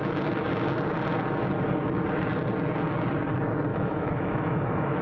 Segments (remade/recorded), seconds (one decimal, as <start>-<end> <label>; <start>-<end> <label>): 0.0-3.7 recorded; 3.7-5.0 remade